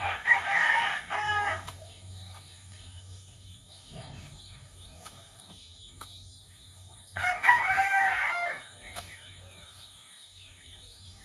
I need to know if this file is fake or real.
fake